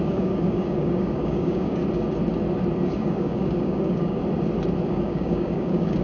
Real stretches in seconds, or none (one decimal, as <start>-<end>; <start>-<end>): 1.8-3.0; 4.2-4.9